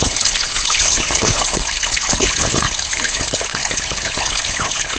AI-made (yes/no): yes